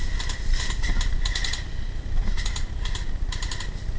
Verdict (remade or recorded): recorded